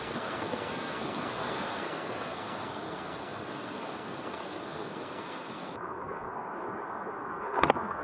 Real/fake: fake